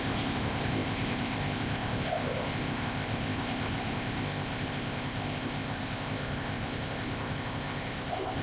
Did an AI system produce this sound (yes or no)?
yes